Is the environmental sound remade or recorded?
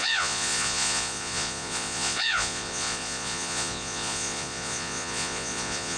remade